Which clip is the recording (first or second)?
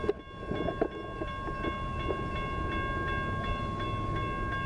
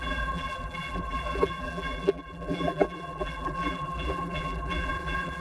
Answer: first